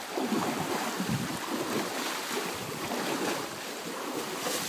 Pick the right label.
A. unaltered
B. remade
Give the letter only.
A